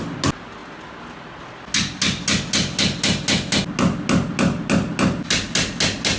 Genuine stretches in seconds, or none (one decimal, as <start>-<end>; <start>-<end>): 0.0-6.2